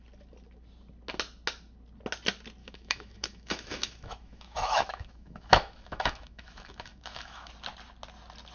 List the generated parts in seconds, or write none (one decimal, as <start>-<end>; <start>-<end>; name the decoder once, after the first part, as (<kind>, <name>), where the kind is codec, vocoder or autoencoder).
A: 2.6-7.5 (autoencoder, DAC-VAE)